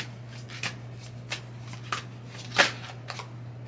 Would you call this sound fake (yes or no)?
no